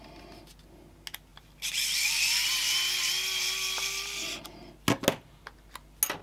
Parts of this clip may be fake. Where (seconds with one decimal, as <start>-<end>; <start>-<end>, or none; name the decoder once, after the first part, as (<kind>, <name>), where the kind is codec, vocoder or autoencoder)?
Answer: 1.3-4.4 (vocoder, BigVGAN v2)